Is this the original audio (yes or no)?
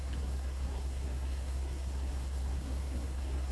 no